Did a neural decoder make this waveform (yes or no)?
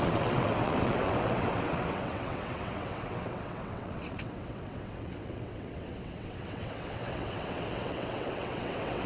yes